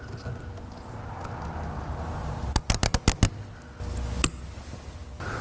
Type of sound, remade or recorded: recorded